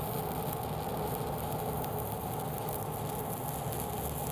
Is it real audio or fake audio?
real